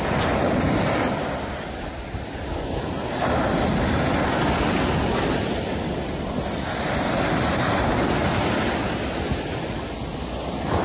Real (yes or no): yes